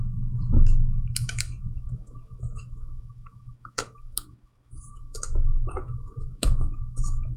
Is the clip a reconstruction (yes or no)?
yes